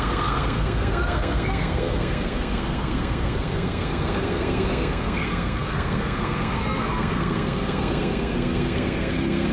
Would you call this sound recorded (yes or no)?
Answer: no